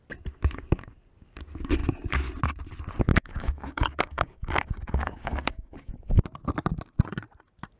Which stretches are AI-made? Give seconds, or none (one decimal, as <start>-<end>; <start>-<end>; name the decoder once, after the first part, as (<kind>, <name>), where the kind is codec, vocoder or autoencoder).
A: 3.1-5.9 (codec, DAC)